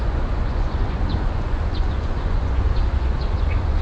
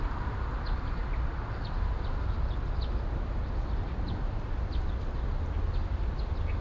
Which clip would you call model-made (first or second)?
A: first